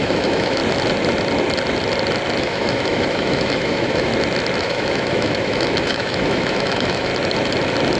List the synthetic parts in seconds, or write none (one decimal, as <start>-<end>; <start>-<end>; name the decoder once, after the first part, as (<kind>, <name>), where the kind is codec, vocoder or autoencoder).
0.0-0.6 (autoencoder, DAC-VAE); 2.4-4.1; 4.6-7.1